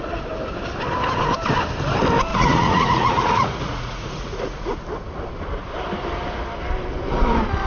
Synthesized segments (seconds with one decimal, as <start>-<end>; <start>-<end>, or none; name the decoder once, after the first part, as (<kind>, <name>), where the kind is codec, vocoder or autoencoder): 2.3-4.8 (vocoder, Vocos)